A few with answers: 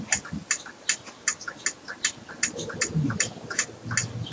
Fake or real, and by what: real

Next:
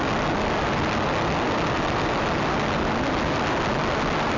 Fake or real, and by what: real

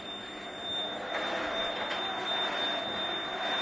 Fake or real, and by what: real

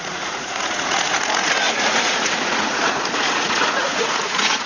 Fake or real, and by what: fake, vocoder, Vocos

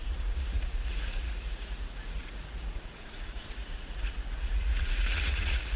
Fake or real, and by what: fake, vocoder, Vocos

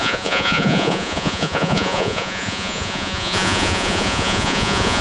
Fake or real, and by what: fake, vocoder, Vocos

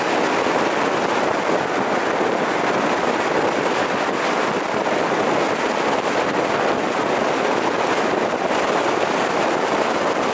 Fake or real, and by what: real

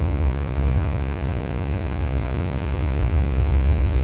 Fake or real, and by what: fake, vocoder, Vocos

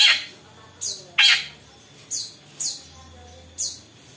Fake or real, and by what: real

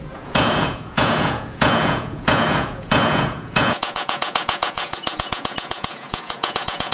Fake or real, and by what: fake, vocoder, Vocos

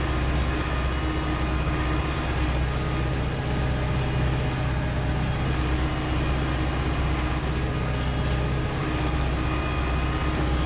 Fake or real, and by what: real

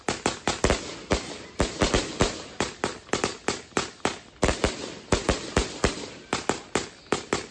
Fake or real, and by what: real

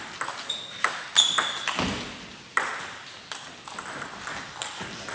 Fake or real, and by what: real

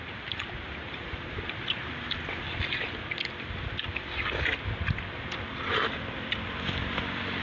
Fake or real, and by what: real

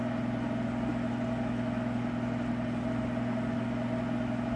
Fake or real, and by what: real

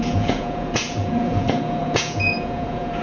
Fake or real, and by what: fake, vocoder, Vocos